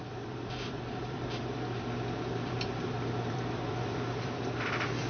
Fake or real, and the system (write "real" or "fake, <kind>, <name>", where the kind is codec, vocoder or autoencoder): fake, vocoder, BigVGAN v2